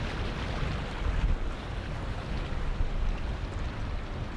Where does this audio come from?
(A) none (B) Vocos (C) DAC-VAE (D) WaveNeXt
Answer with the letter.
A